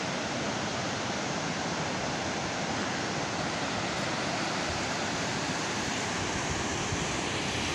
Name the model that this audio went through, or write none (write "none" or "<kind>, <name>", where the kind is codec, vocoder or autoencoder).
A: vocoder, BigVGAN v2